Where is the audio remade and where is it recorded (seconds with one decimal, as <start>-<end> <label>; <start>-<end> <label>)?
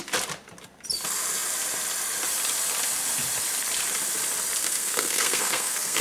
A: 0.0-4.6 recorded; 4.6-6.0 remade